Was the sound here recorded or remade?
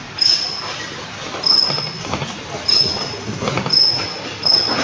recorded